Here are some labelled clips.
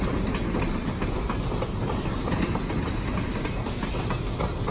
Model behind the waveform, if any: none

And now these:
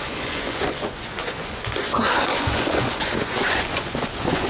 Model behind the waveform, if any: vocoder, Vocos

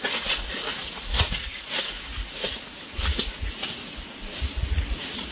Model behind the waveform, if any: vocoder, Vocos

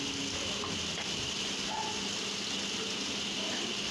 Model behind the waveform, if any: none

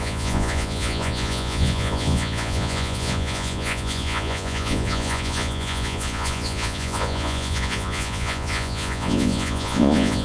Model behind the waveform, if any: vocoder, Vocos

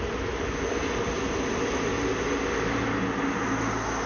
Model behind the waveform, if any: none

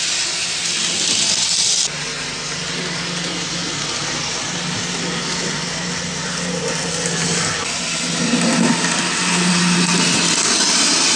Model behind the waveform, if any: none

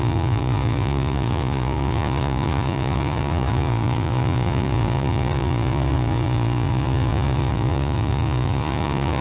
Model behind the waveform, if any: vocoder, Vocos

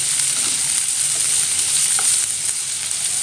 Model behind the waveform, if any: none